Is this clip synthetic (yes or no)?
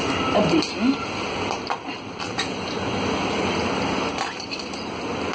no